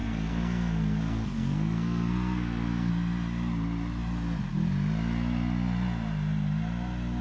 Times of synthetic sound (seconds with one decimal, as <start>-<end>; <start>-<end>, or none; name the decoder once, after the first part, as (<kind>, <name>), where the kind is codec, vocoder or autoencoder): 0.0-2.9 (codec, SNAC)